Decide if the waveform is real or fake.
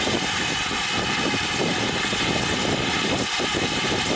real